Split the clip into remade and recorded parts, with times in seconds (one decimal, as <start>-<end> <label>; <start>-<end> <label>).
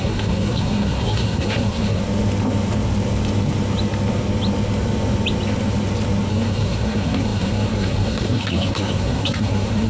0.0-2.0 remade; 2.0-6.3 recorded; 6.3-9.9 remade